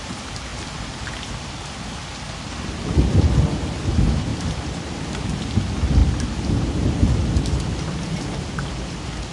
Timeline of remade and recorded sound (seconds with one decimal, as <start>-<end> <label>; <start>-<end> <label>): 0.0-4.3 recorded; 4.3-5.1 remade; 5.1-9.3 recorded